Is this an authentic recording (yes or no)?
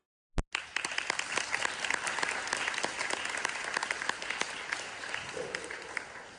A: yes